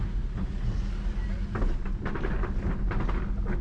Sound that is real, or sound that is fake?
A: real